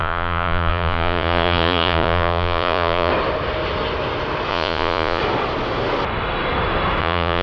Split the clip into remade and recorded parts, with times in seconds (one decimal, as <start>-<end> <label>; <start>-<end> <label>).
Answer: 0.0-3.1 remade; 3.1-4.5 recorded; 4.5-5.2 remade; 5.2-7.0 recorded; 7.0-7.4 remade